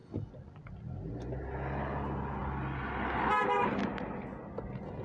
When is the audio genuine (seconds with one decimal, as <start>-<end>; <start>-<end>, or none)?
0.0-5.0